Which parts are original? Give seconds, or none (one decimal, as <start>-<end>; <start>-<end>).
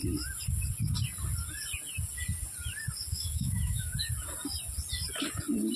0.0-3.1; 3.9-5.8